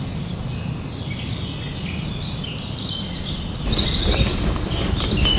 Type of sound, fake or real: real